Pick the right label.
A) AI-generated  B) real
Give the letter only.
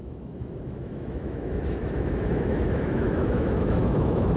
A